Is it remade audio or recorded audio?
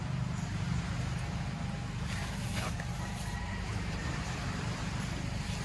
remade